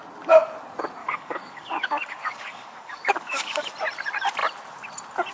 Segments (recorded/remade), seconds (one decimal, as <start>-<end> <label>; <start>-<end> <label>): 0.0-1.0 recorded; 1.0-3.7 remade; 3.7-5.3 recorded